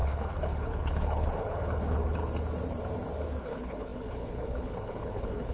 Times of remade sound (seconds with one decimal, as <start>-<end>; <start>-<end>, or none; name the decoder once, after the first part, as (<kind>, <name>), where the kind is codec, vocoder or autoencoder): 0.0-2.2 (codec, HILCodec); 3.4-5.5